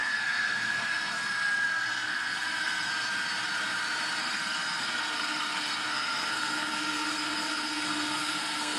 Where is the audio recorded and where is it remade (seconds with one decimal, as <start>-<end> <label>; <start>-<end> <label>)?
0.0-2.9 remade; 2.9-4.2 recorded; 4.2-8.8 remade

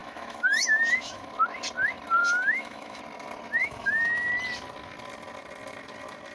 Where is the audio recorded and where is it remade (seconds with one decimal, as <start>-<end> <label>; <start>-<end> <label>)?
0.0-1.3 remade; 1.3-2.2 recorded; 2.2-3.0 remade; 3.0-3.6 recorded; 3.6-4.3 remade; 4.3-6.3 recorded

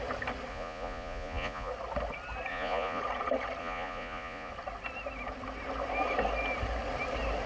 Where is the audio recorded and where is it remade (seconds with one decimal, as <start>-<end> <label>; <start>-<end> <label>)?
0.0-0.5 recorded; 0.5-1.7 remade; 1.7-2.5 recorded; 2.5-3.0 remade; 3.0-3.6 recorded; 3.6-4.5 remade; 4.5-7.5 recorded

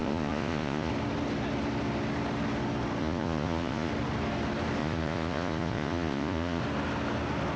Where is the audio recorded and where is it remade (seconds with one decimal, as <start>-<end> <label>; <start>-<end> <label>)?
0.0-0.9 remade; 0.9-3.0 recorded; 3.0-3.9 remade; 3.9-4.8 recorded; 4.8-6.6 remade; 6.6-7.6 recorded